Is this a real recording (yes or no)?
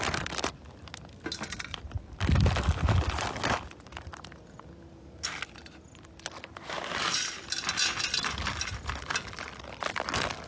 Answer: yes